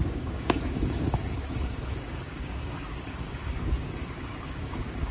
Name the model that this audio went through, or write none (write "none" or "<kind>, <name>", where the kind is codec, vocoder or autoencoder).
codec, DAC